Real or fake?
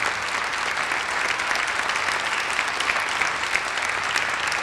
real